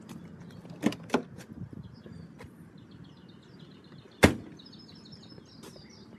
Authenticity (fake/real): real